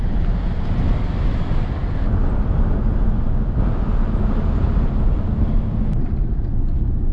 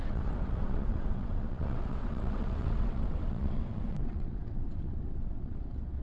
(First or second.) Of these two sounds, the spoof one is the second